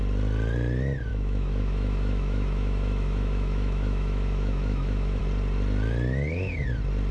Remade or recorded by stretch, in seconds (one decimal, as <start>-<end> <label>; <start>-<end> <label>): 0.0-1.1 recorded; 1.1-5.2 remade; 5.2-7.1 recorded